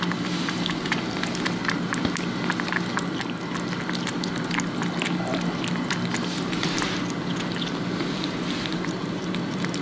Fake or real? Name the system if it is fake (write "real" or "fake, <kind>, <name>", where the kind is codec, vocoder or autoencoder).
real